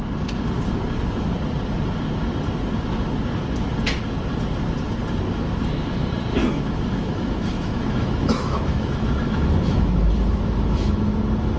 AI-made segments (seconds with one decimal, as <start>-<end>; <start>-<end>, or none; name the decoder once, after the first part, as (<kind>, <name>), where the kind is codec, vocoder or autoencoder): 6.4-11.2 (autoencoder, DAC-VAE)